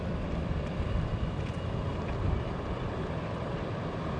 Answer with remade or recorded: remade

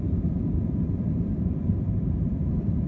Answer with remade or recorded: remade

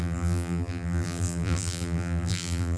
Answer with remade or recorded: remade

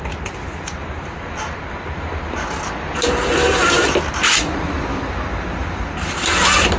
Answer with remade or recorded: recorded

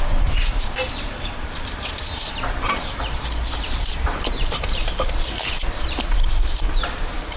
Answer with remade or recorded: remade